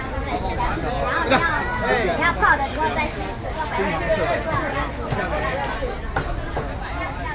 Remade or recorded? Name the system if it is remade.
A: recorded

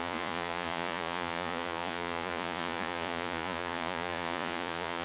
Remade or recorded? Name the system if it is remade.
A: remade, vocoder, Vocos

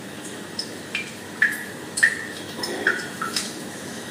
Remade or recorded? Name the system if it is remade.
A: remade, autoencoder, DAC-VAE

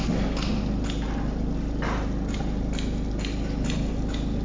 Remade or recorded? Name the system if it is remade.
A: recorded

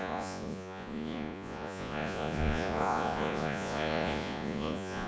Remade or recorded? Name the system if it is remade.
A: remade, vocoder, Vocos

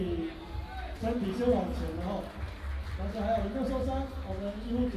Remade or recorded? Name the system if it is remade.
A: recorded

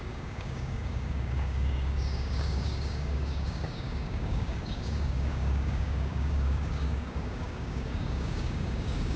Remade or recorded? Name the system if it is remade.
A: remade, codec, DAC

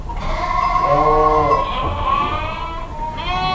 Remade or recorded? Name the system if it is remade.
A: recorded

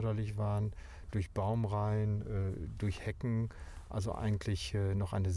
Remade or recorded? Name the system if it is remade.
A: recorded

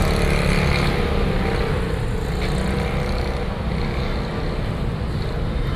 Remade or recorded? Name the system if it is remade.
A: recorded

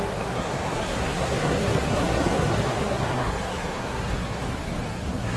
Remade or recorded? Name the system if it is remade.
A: remade, codec, SNAC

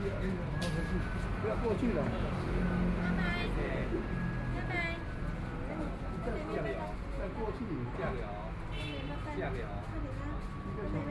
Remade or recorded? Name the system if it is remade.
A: recorded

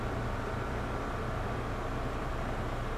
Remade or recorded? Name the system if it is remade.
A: recorded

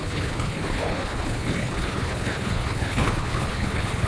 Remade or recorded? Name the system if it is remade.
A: remade, codec, HILCodec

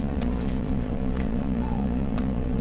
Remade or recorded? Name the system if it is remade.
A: remade, vocoder, Vocos